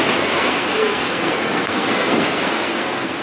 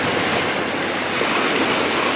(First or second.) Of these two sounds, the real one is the second